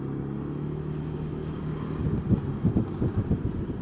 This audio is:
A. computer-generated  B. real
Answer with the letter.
B